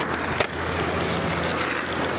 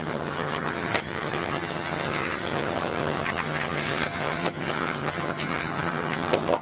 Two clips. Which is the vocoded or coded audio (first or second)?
second